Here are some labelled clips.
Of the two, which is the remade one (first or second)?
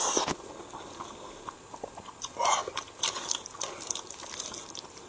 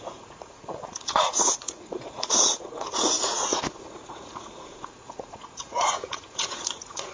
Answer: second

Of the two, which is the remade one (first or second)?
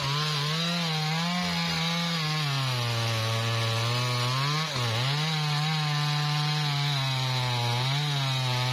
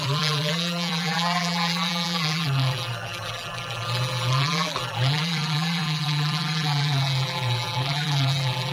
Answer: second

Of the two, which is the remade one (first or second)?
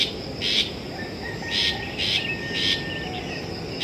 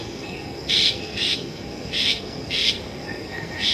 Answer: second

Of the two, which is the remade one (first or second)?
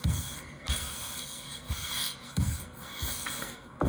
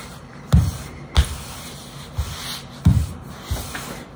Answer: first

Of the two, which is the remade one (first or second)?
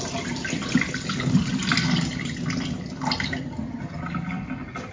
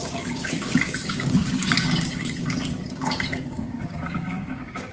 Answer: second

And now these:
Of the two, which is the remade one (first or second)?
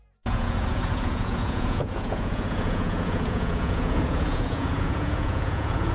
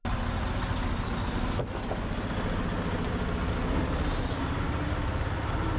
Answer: first